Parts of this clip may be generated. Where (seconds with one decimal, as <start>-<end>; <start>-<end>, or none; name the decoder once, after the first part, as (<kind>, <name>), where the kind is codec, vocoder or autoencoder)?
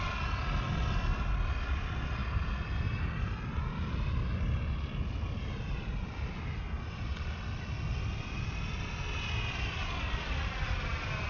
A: none